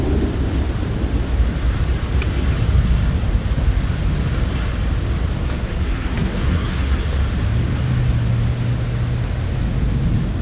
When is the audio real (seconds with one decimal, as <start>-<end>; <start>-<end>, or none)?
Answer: 0.0-5.4; 7.0-10.4